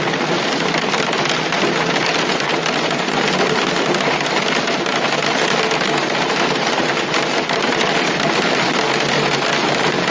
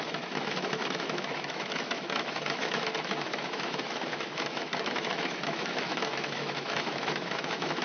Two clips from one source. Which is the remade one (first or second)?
second